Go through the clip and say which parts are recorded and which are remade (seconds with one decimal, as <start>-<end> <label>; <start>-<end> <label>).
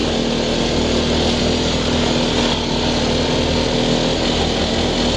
0.0-5.2 recorded